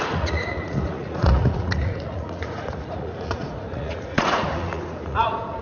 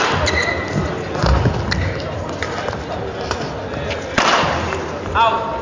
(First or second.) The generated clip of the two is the first